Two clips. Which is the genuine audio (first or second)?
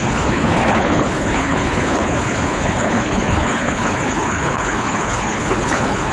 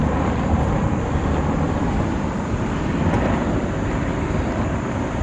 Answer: second